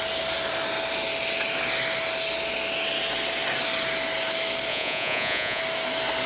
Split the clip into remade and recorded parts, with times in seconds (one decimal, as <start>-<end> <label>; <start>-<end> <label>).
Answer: 0.0-4.7 recorded; 4.7-5.6 remade; 5.6-6.3 recorded